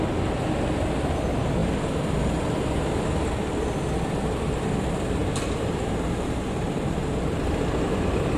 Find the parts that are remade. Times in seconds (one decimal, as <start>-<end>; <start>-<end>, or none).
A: 5.2-7.4